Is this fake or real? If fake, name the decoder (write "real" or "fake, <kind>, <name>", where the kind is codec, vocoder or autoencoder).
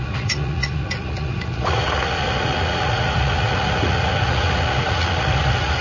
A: fake, vocoder, Vocos